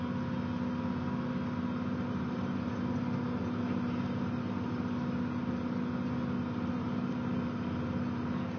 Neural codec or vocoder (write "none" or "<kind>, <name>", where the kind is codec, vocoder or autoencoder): none